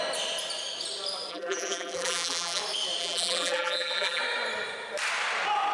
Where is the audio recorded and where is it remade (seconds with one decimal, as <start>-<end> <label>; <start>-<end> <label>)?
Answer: 0.0-1.3 recorded; 1.3-2.6 remade; 2.6-3.0 recorded; 3.0-4.2 remade; 4.2-5.7 recorded